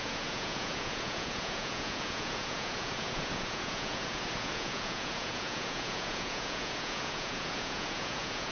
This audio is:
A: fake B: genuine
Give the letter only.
A